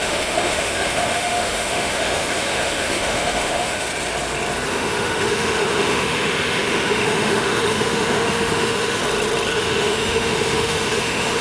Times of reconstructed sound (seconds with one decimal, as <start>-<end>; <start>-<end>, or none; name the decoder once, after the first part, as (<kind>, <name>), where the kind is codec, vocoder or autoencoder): 0.0-3.9 (autoencoder, DAC-VAE); 4.7-9.0; 9.5-11.4

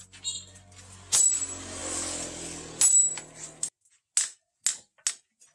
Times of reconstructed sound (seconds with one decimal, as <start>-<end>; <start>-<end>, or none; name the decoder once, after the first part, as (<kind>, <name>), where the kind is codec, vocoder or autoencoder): none

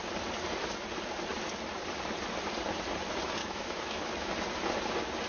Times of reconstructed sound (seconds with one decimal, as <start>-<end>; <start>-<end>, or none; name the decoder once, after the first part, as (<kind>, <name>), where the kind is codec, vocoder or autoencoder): 3.4-4.3 (autoencoder, DAC-VAE)

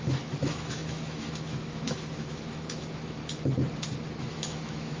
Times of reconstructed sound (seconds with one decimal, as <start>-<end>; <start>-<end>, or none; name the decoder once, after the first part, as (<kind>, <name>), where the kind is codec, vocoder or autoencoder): 0.0-3.2 (autoencoder, DAC-VAE); 4.3-5.0

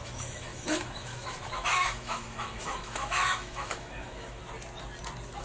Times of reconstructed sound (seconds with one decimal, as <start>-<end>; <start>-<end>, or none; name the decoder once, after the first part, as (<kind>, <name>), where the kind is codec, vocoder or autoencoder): 0.0-4.4 (autoencoder, DAC-VAE)

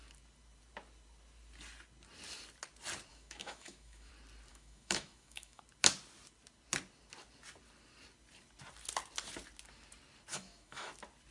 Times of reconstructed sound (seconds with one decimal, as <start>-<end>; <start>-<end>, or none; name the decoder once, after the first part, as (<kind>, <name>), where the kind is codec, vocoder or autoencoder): 3.1-4.1 (autoencoder, DAC-VAE); 4.5-5.6; 10.3-10.9

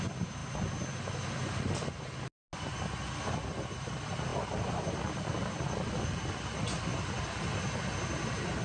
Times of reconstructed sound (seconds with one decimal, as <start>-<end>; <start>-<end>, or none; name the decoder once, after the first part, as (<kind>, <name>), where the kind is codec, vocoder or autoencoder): none